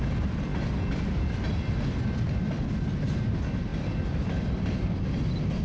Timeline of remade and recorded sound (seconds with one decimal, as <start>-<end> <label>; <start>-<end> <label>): 0.0-5.6 recorded